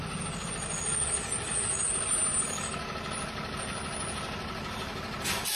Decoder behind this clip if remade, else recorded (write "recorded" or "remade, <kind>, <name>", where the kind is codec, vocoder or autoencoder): recorded